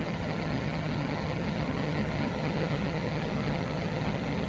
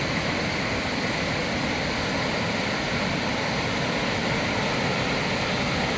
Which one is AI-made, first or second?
first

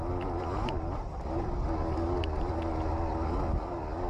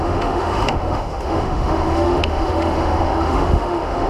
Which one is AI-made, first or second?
second